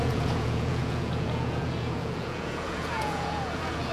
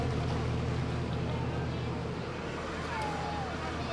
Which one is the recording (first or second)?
second